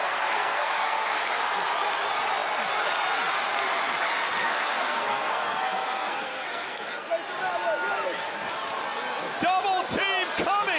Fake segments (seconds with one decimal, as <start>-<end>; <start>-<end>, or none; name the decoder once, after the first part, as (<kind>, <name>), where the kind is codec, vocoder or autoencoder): 0.0-1.2 (codec, SNAC); 4.4-7.1